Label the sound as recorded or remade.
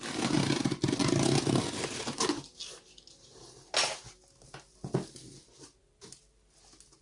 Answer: recorded